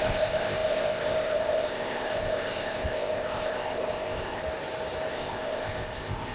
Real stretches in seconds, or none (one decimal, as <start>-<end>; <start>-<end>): 4.4-5.1